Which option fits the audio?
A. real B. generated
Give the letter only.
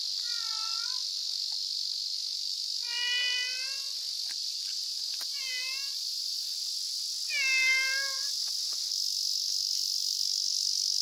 A